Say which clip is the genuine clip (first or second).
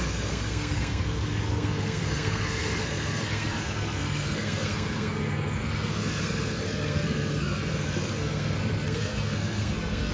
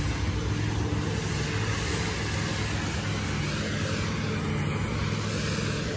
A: second